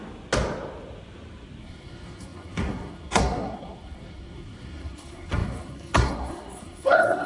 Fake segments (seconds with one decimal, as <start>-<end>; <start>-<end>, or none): 1.6-7.3